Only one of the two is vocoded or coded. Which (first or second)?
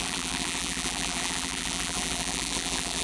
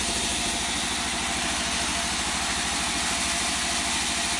first